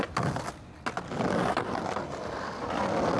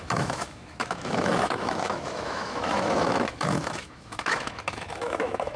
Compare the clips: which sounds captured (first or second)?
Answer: first